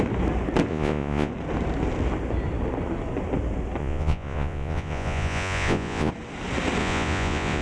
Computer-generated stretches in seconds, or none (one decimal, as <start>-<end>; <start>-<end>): 0.7-1.3; 3.8-6.1; 6.8-7.6